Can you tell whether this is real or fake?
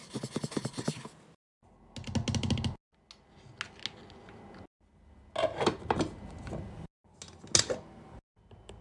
real